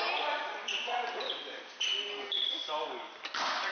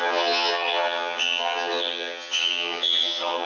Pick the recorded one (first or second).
first